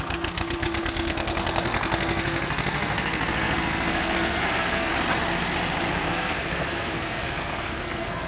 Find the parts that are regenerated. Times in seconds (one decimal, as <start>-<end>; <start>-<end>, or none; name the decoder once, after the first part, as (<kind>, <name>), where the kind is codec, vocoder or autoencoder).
0.0-4.9 (codec, SNAC); 5.9-8.3